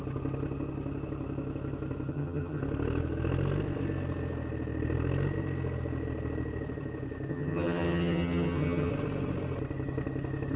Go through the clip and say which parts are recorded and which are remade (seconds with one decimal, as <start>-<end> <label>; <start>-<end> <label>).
0.0-2.1 recorded; 2.1-2.6 remade; 2.6-7.3 recorded; 7.3-8.9 remade; 8.9-10.6 recorded